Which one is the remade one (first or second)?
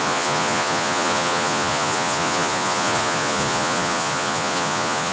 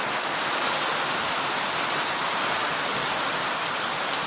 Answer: first